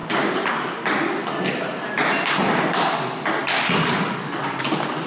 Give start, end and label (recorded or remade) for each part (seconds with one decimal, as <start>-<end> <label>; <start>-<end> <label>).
0.0-5.1 recorded